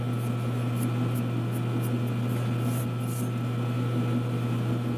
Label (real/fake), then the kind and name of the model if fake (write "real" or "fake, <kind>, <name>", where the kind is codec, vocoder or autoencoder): real